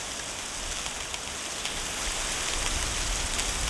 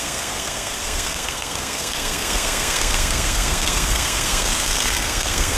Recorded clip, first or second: first